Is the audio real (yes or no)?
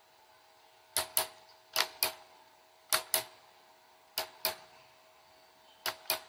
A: yes